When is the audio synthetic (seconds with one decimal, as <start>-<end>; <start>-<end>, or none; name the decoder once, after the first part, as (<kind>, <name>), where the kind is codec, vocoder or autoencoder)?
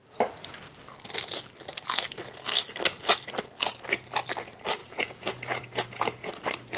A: 4.8-6.3 (vocoder, Vocos)